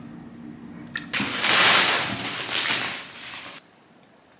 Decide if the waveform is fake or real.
real